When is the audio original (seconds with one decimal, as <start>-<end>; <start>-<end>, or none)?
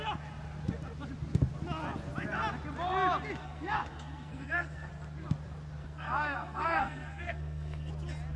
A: 0.0-3.4; 4.9-5.8; 7.9-8.4